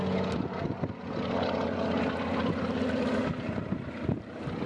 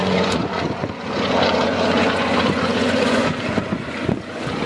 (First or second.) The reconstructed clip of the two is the second